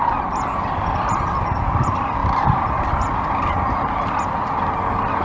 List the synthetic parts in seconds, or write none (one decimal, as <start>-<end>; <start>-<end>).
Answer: none